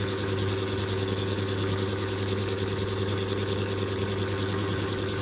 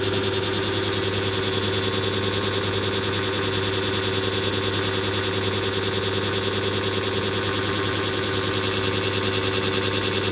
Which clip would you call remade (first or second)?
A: first